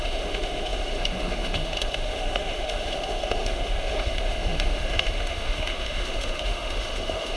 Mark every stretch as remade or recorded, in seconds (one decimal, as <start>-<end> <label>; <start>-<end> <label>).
0.0-7.4 remade